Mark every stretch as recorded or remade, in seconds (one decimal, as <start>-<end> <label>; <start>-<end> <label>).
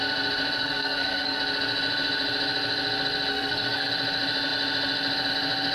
0.0-0.6 recorded; 0.6-1.4 remade; 1.4-3.3 recorded; 3.3-3.9 remade; 3.9-5.7 recorded